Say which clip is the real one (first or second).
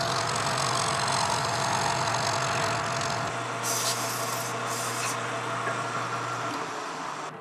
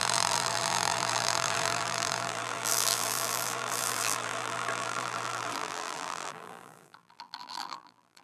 first